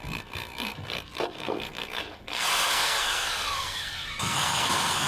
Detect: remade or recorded remade